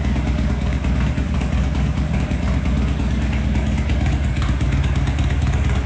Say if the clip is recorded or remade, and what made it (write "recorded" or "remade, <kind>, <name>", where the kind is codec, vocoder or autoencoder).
remade, codec, DAC